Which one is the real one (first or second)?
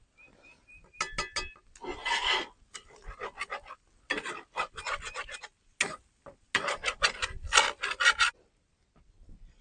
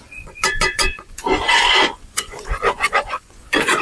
first